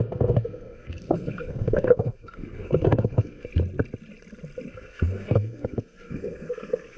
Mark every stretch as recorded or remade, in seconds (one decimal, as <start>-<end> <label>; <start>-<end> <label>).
0.0-3.5 remade; 3.5-4.7 recorded; 4.7-7.0 remade